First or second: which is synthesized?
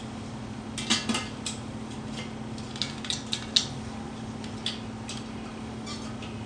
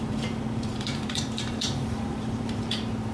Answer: second